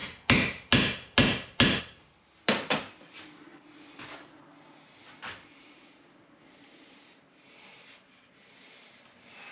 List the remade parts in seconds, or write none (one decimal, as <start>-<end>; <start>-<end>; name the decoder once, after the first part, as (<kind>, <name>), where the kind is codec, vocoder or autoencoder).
none

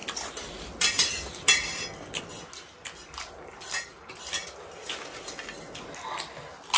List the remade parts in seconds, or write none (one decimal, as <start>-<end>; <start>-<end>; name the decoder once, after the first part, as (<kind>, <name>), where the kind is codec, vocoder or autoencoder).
0.0-2.2 (vocoder, BigVGAN v2); 3.9-4.9

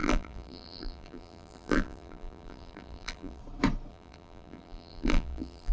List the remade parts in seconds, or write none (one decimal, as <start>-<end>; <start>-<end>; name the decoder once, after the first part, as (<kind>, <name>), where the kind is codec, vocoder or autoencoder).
0.0-3.4 (vocoder, BigVGAN v2); 3.9-5.7